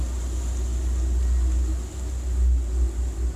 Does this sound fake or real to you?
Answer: real